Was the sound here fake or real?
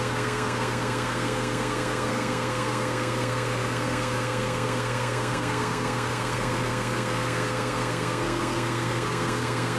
fake